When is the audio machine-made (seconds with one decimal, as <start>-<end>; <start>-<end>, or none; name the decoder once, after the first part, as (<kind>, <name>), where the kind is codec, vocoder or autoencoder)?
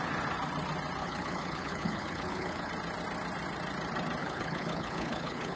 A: 1.0-2.7 (codec, HILCodec); 4.2-5.6